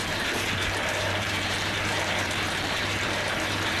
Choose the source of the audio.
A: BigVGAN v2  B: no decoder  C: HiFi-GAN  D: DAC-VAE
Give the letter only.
A